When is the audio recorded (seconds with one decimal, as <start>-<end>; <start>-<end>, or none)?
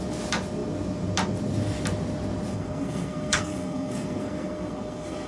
0.0-2.5